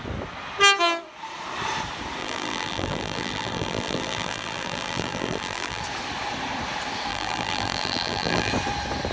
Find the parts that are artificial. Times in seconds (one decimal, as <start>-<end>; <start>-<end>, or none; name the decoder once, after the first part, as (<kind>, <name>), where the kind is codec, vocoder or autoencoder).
2.2-5.8 (vocoder, BigVGAN v2); 7.1-8.5